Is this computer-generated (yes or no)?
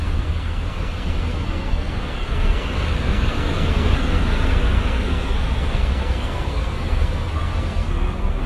yes